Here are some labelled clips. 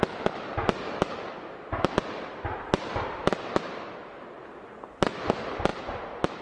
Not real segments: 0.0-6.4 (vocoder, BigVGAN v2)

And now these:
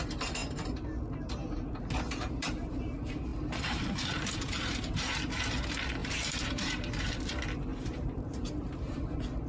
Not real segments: 3.3-5.3 (vocoder, BigVGAN v2); 6.0-7.2; 7.7-9.1

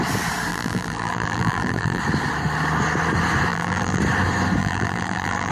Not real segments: 0.5-2.0 (vocoder, BigVGAN v2); 3.5-4.0; 4.6-5.5

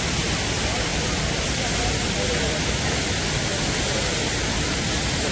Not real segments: none

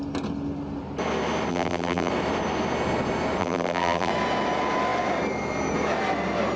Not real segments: 1.5-2.1 (vocoder, BigVGAN v2); 3.4-4.1